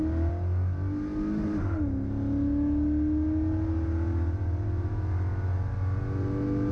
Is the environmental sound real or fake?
real